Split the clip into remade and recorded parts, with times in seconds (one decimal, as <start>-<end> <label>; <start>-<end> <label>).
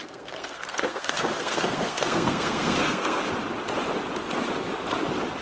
0.0-3.2 remade; 3.2-5.4 recorded